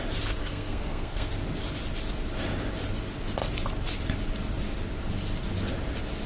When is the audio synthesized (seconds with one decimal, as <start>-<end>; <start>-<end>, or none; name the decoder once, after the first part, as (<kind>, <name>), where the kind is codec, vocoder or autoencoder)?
0.4-1.3 (codec, SNAC)